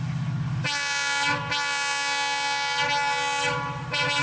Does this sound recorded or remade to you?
recorded